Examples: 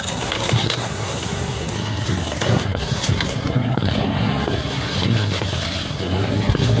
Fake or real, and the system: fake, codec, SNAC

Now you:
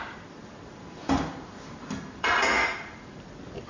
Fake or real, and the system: fake, vocoder, BigVGAN v2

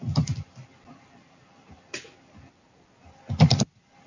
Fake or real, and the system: real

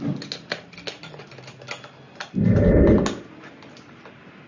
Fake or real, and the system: real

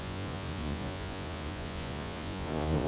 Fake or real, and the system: fake, vocoder, Vocos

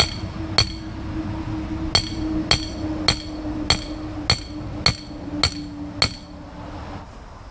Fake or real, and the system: real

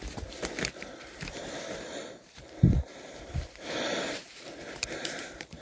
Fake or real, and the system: fake, vocoder, BigVGAN v2